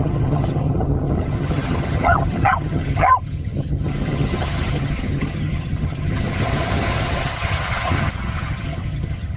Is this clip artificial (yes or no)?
yes